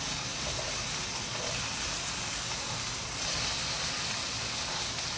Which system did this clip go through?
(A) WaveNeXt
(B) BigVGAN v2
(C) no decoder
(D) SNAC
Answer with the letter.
C